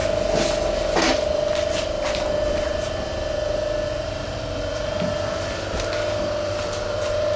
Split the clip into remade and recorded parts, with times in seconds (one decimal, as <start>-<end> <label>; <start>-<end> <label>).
0.0-1.0 recorded; 1.0-7.4 remade

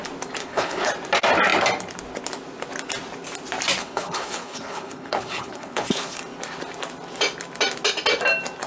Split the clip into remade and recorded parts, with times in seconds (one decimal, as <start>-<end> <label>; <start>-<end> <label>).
0.0-0.4 recorded; 0.4-0.9 remade; 0.9-3.8 recorded; 3.8-6.2 remade; 6.2-8.7 recorded

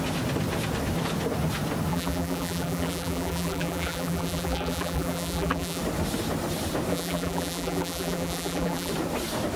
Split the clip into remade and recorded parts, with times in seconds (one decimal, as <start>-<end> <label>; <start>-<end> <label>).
0.0-1.9 recorded; 1.9-5.8 remade; 5.8-6.9 recorded; 6.9-8.9 remade; 8.9-9.6 recorded

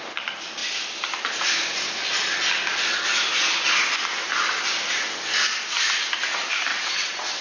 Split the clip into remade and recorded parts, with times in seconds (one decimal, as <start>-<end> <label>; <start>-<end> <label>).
0.0-6.7 recorded; 6.7-7.4 remade